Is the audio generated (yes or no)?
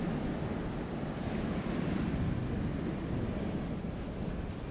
no